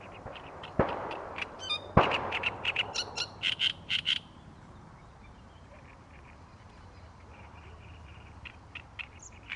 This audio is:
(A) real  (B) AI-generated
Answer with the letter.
B